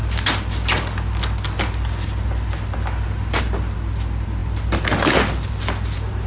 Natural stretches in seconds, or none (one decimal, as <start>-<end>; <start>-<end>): 0.0-6.3